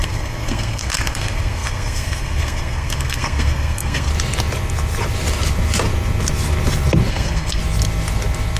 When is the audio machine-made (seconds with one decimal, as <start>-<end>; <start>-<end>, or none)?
0.0-4.1; 7.1-7.6